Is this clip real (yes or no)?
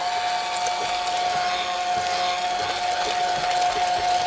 yes